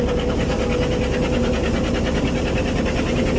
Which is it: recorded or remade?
recorded